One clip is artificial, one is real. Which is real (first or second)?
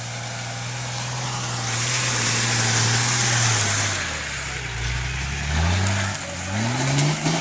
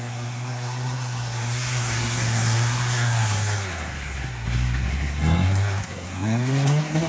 first